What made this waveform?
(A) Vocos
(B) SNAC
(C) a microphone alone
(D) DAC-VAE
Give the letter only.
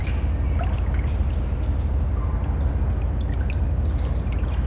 C